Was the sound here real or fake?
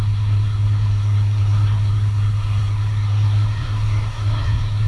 fake